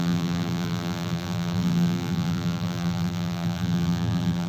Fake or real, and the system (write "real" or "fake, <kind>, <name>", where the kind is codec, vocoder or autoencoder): fake, vocoder, BigVGAN v2